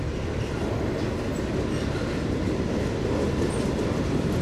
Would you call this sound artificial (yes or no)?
no